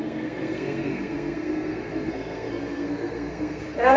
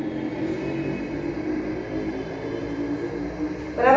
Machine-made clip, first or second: first